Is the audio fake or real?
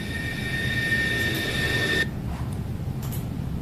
real